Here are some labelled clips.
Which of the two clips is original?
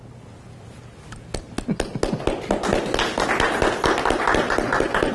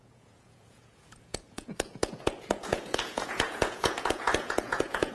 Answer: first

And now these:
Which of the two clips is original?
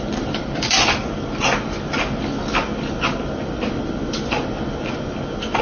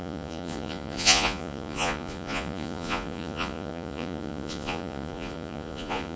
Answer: first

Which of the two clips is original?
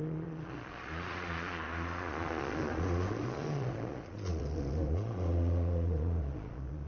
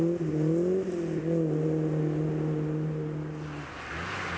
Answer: second